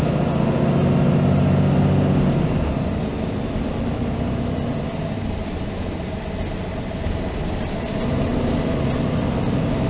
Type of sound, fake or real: real